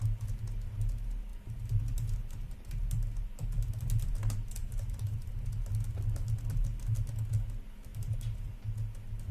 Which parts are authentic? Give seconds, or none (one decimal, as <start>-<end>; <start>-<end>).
0.0-1.3; 2.7-4.6; 5.5-7.9; 8.5-9.3